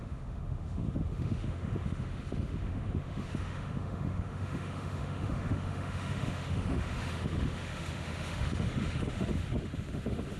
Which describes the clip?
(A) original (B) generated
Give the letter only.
B